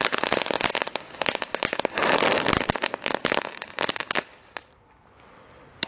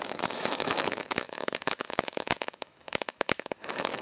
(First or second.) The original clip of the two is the first